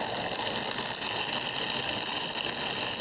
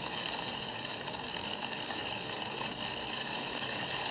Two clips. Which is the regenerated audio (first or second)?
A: second